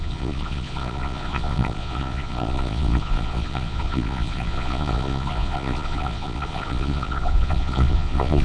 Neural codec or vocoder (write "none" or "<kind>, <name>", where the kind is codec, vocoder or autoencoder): vocoder, Vocos